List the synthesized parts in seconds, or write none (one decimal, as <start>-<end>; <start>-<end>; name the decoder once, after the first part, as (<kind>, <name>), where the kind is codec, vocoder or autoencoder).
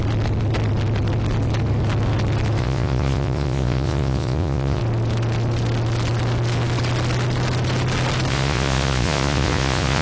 2.6-4.8 (vocoder, Vocos); 8.3-10.0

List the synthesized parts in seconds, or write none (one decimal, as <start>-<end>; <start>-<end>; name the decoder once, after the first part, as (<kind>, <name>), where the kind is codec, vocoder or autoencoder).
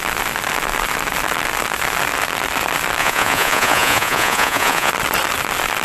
3.0-4.9 (vocoder, Vocos)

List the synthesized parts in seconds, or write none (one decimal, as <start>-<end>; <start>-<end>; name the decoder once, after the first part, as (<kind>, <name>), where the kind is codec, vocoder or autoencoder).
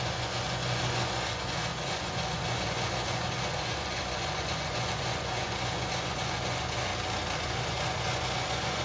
0.0-6.9 (vocoder, Vocos); 7.4-8.8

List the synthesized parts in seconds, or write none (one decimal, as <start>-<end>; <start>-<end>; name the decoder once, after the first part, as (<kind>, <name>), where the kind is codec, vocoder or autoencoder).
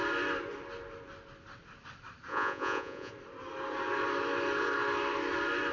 2.3-3.1 (vocoder, Vocos)